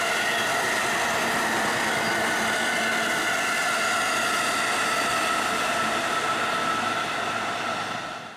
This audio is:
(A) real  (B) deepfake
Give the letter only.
A